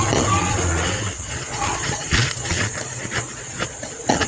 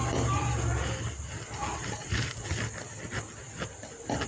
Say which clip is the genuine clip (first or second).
second